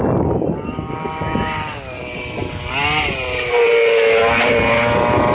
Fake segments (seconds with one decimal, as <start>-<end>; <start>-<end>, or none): none